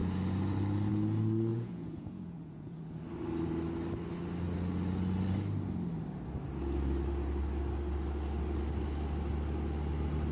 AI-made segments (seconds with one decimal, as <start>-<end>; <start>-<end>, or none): 1.5-3.0